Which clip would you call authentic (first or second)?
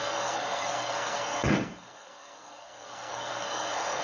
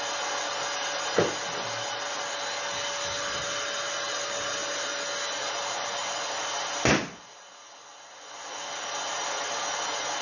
second